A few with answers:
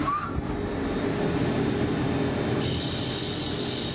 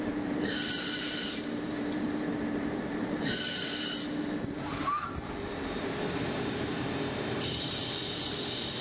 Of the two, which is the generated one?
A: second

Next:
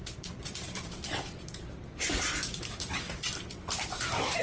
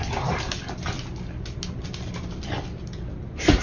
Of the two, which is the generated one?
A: first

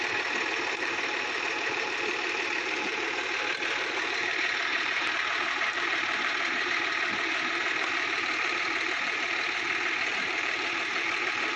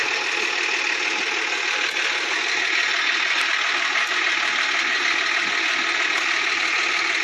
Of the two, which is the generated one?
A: first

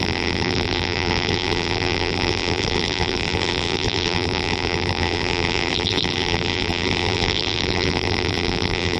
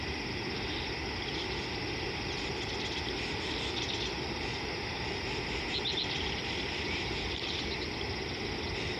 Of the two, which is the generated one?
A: first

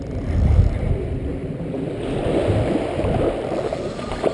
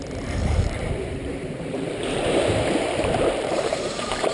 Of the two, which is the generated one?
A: second